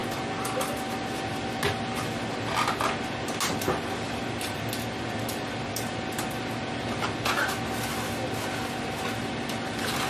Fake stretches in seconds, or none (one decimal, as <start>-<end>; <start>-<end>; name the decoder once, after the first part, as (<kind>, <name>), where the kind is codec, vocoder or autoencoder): none